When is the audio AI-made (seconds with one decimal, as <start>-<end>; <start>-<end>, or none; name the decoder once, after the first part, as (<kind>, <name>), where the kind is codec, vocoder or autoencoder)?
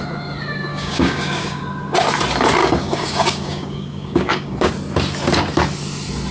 0.7-1.6 (codec, DAC); 2.6-4.7